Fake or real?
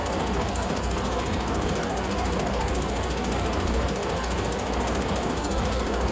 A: fake